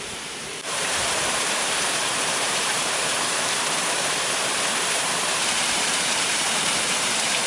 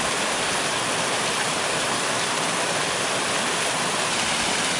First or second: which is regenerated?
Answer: first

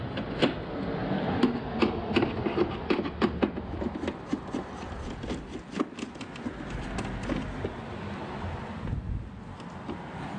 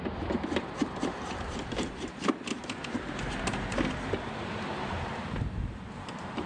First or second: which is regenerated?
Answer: second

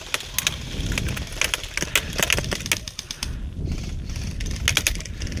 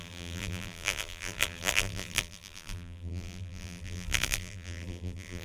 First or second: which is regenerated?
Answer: second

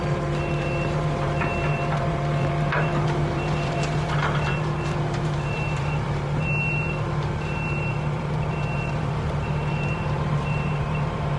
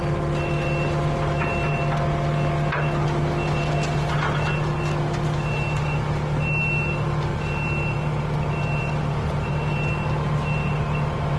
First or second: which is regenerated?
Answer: first